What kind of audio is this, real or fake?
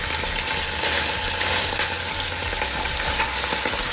real